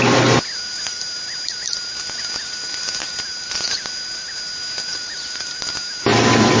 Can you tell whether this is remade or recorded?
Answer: recorded